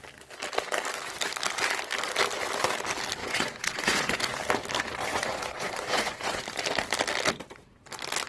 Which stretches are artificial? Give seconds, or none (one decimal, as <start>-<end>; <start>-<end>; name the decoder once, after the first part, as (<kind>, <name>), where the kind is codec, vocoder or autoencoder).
3.2-4.2 (vocoder, Vocos); 5.1-6.4